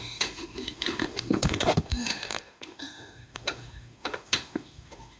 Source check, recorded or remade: remade